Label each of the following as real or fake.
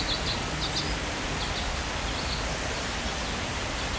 real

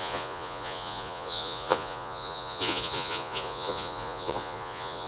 fake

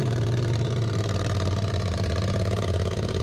fake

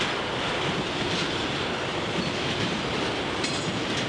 real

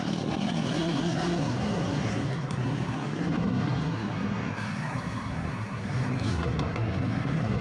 fake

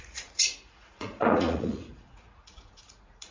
fake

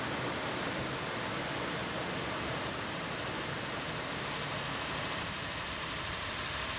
real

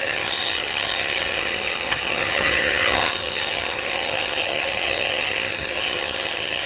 fake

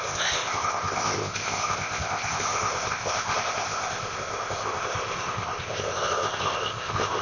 fake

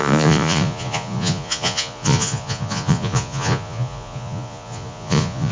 fake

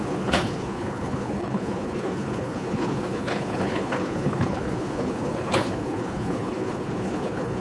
fake